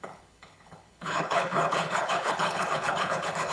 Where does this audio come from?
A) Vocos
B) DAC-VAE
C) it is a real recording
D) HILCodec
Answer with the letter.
D